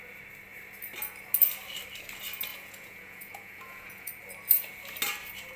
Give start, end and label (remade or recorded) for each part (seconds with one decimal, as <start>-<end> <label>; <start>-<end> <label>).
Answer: 0.0-2.5 recorded; 2.5-4.1 remade; 4.1-5.6 recorded